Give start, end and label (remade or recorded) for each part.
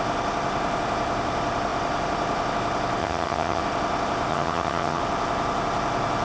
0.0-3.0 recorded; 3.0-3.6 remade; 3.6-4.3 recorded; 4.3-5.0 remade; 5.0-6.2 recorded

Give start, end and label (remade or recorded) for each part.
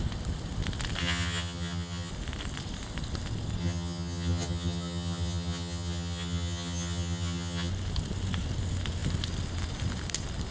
0.0-1.0 recorded; 1.0-2.1 remade; 2.1-3.6 recorded; 3.6-7.7 remade; 7.7-10.5 recorded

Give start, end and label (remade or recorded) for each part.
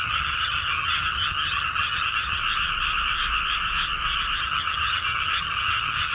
0.0-2.4 remade; 2.4-4.4 recorded; 4.4-6.1 remade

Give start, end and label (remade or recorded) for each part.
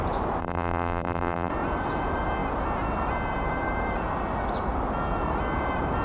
0.0-0.4 recorded; 0.4-1.5 remade; 1.5-6.0 recorded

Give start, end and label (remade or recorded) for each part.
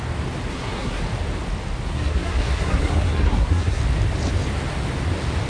0.0-0.5 recorded; 0.5-1.0 remade; 1.0-1.9 recorded; 1.9-3.8 remade; 3.8-5.5 recorded